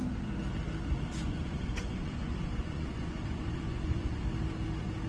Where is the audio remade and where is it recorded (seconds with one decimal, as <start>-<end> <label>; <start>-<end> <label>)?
0.0-1.1 recorded; 1.1-4.2 remade; 4.2-5.1 recorded